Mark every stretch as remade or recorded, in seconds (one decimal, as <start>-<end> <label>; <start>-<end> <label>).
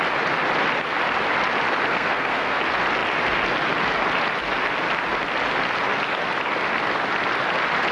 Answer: 0.0-1.9 recorded; 1.9-2.6 remade; 2.6-7.9 recorded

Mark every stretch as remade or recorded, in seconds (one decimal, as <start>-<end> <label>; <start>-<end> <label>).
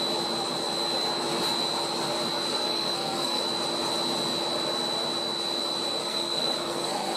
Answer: 0.0-2.5 recorded; 2.5-3.4 remade; 3.4-6.0 recorded; 6.0-7.2 remade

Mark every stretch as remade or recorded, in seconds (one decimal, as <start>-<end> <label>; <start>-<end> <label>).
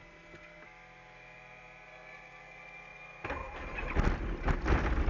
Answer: 0.0-5.1 recorded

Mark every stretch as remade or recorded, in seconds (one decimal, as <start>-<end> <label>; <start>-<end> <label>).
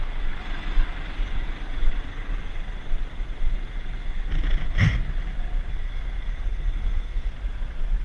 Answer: 0.0-5.7 recorded; 5.7-7.3 remade; 7.3-8.0 recorded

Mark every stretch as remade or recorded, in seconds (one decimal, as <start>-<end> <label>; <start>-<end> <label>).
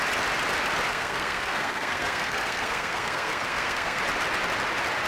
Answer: 0.0-0.9 recorded; 0.9-4.0 remade; 4.0-5.1 recorded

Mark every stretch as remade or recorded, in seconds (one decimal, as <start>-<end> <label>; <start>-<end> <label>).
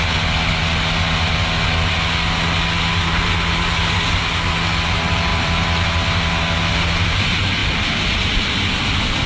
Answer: 0.0-9.3 recorded